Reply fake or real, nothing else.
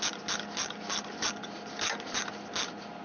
real